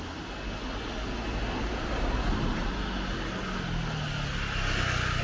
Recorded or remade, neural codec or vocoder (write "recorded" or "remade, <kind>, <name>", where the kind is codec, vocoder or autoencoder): recorded